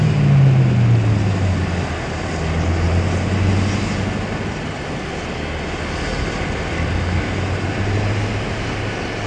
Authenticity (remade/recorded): recorded